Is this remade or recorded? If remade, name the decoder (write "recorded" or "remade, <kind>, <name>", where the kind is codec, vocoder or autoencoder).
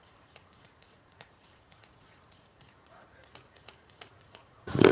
remade, vocoder, Vocos